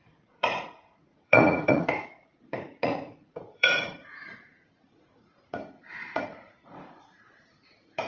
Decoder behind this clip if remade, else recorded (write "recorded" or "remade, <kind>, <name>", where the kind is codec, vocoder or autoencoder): remade, vocoder, Vocos